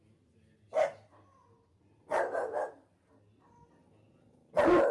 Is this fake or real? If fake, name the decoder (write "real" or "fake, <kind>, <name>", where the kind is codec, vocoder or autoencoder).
real